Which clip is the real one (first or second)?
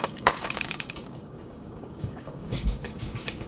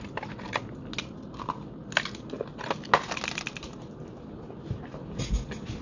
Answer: second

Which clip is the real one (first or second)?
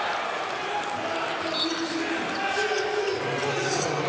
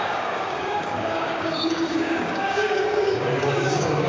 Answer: first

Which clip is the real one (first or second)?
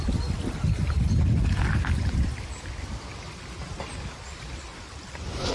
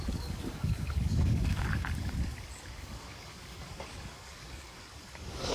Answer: first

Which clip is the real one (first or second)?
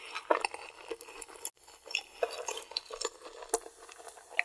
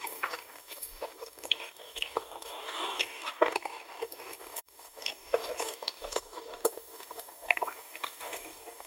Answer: first